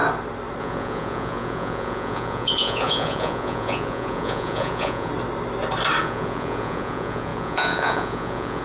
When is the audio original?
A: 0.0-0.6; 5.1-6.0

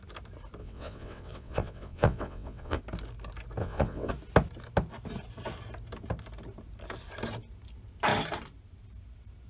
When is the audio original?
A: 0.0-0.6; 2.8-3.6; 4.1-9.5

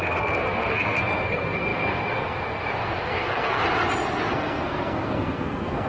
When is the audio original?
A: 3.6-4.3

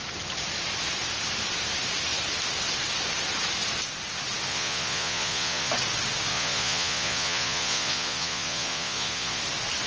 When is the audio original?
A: 0.0-4.5; 5.7-6.3; 9.4-9.9

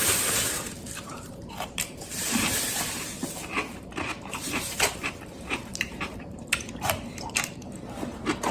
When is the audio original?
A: none